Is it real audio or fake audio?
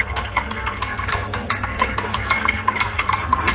fake